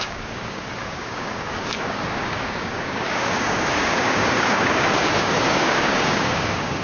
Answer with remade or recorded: remade